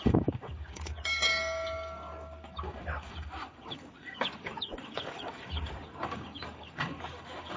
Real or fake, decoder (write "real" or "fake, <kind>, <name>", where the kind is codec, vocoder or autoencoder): fake, codec, DAC